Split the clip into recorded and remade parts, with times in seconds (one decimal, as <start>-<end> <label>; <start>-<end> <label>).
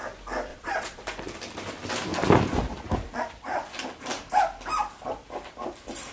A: 0.0-0.5 recorded; 0.5-1.0 remade; 1.0-6.1 recorded